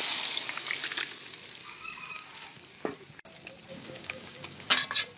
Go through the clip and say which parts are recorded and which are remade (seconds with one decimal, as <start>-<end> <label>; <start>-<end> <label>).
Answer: 0.0-1.6 recorded; 1.6-2.6 remade; 2.6-3.7 recorded; 3.7-4.7 remade; 4.7-5.2 recorded